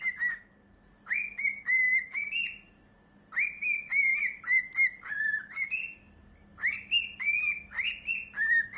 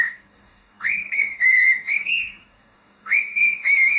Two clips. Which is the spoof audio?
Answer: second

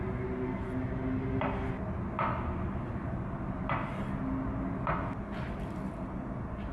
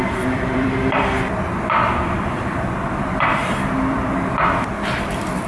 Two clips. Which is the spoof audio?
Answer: second